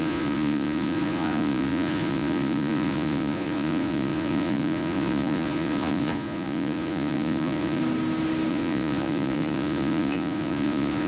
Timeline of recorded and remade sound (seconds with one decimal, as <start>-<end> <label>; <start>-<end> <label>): 0.0-7.8 remade; 7.8-8.5 recorded; 8.5-11.1 remade